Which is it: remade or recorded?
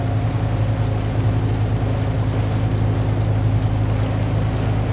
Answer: recorded